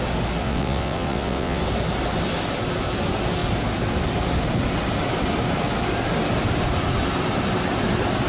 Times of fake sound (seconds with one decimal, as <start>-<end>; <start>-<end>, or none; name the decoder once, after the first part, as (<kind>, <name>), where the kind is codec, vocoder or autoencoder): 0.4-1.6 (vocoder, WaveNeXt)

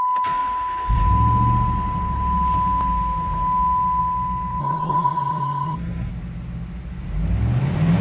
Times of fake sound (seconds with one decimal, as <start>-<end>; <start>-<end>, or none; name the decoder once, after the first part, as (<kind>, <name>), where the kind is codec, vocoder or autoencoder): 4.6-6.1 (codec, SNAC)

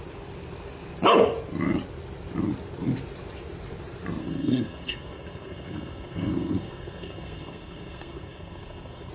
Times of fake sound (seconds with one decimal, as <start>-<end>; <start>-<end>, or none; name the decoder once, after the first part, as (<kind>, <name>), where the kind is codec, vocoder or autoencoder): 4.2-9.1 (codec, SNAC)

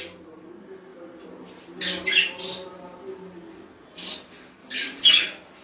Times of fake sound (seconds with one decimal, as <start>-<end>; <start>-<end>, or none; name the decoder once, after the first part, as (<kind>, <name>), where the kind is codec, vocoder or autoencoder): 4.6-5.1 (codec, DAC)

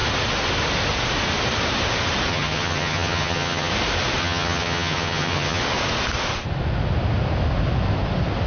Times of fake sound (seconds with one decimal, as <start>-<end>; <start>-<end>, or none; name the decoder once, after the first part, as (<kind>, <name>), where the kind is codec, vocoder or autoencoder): 2.3-3.7 (vocoder, HiFi-GAN); 4.2-5.6

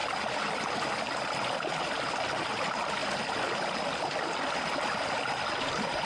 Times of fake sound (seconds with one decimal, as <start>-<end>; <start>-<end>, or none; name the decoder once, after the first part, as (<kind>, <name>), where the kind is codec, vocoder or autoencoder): 0.0-0.9 (vocoder, BigVGAN v2); 1.7-2.6

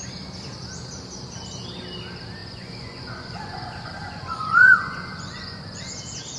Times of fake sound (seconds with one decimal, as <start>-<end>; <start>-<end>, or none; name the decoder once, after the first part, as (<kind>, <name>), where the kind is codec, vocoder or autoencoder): 2.4-6.0 (vocoder, Vocos)